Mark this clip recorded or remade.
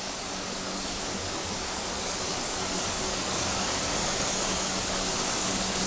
remade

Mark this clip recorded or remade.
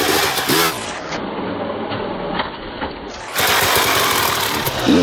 recorded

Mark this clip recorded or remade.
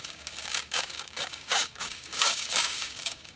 remade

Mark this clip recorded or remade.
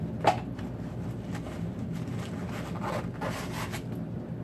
recorded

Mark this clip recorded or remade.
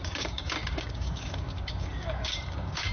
remade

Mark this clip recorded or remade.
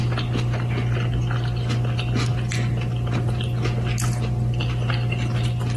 recorded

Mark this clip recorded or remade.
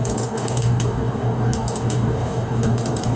remade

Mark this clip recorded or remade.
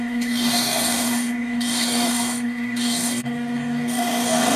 remade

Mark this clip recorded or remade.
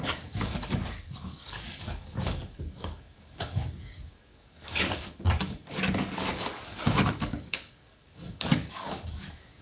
remade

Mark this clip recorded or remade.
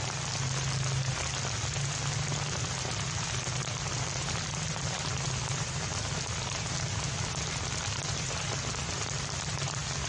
recorded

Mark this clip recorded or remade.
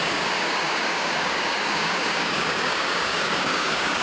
remade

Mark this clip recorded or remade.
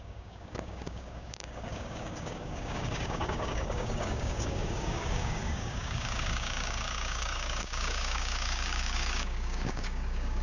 remade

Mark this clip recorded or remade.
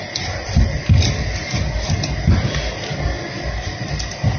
recorded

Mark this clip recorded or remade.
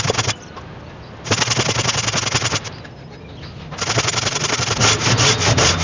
recorded